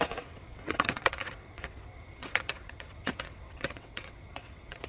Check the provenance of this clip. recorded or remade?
remade